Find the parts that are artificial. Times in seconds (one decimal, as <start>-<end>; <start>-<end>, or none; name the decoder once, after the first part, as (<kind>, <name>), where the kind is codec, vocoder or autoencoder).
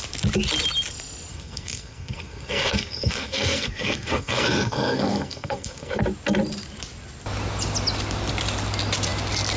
1.3-6.0 (codec, SNAC)